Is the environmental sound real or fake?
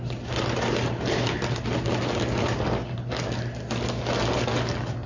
real